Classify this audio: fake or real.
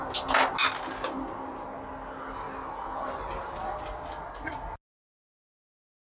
real